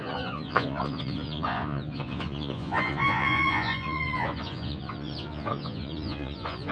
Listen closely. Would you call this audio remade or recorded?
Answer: remade